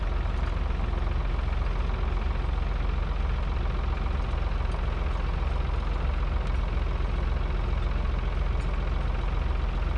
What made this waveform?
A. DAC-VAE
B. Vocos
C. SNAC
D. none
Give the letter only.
D